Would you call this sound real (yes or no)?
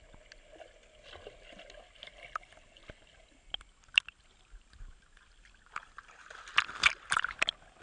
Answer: yes